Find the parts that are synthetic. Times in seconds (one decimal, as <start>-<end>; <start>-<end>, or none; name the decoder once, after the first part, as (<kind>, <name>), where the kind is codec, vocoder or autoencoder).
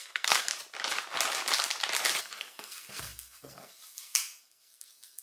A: 0.0-0.5 (codec, SNAC); 2.2-5.2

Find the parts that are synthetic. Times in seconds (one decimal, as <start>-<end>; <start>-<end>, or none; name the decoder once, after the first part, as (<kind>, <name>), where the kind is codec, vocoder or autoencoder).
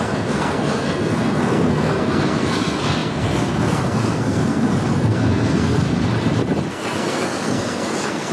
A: 0.0-5.9 (codec, SNAC); 6.7-8.3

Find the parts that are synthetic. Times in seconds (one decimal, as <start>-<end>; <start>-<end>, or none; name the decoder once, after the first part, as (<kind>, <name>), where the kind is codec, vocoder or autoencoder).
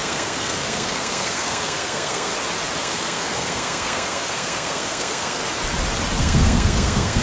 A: 0.0-2.3 (codec, SNAC); 2.8-5.4; 6.2-7.2